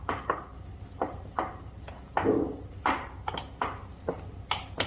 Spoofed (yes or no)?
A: no